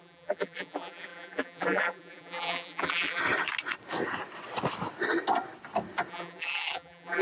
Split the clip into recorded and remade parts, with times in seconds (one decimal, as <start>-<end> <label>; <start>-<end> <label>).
0.0-3.2 remade; 3.2-6.1 recorded; 6.1-7.2 remade